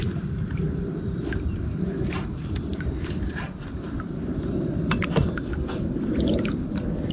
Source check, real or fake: fake